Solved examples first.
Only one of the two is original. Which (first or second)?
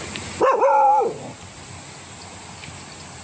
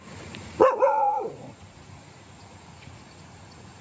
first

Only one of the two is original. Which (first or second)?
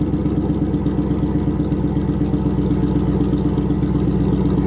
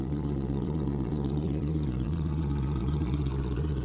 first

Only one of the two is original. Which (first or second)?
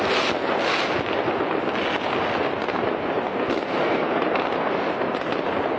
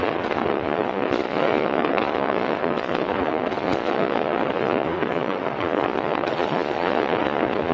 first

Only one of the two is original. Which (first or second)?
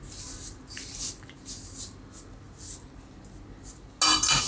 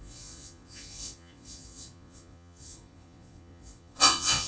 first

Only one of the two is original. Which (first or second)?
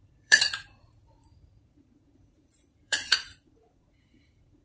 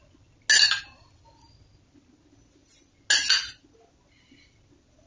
second